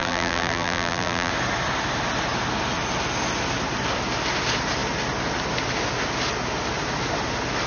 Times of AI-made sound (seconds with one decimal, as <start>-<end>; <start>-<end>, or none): 0.0-1.3